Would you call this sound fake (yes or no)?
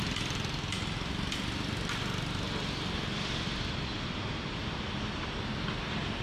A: no